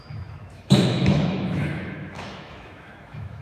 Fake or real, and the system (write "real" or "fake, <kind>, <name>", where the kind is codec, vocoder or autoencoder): fake, autoencoder, DAC-VAE